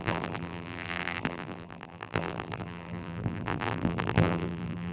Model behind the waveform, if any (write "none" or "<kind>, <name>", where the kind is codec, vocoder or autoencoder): vocoder, BigVGAN v2